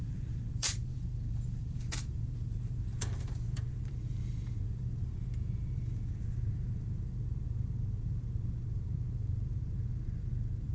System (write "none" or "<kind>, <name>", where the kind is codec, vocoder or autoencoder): vocoder, BigVGAN v2